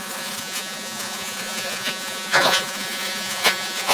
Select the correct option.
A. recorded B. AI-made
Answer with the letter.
B